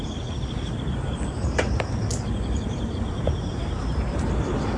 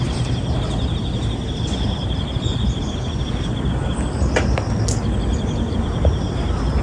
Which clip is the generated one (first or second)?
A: first